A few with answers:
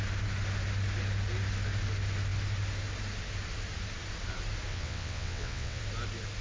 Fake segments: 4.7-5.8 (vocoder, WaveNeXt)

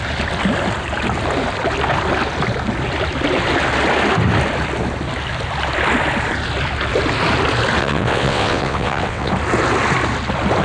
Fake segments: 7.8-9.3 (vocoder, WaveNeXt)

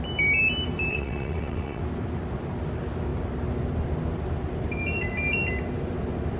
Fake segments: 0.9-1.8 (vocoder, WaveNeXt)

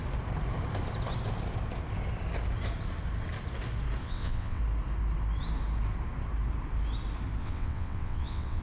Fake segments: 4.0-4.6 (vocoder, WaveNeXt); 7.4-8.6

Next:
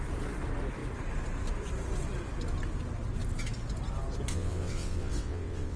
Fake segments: 4.3-5.8 (vocoder, WaveNeXt)

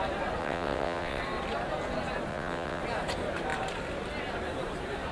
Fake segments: 0.4-1.2 (vocoder, WaveNeXt); 2.3-2.8